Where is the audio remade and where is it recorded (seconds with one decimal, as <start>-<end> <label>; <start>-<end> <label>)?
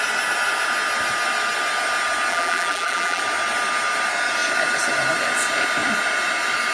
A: 0.0-2.3 recorded; 2.3-3.2 remade; 3.2-6.7 recorded